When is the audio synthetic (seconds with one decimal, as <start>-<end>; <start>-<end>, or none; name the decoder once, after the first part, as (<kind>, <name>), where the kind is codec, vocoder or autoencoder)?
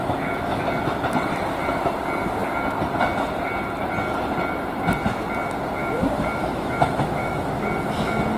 0.0-0.6 (autoencoder, DAC-VAE); 5.8-7.7